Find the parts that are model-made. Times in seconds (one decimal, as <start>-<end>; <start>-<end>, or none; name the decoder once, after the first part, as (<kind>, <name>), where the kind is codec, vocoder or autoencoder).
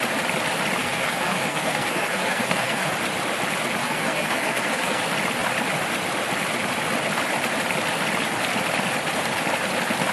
0.8-2.9 (codec, SNAC); 3.8-5.0